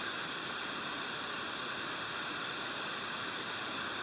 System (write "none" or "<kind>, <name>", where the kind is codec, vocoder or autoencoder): vocoder, BigVGAN v2